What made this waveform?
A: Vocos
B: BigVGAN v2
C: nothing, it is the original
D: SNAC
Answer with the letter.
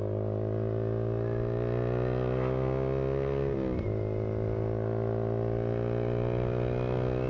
C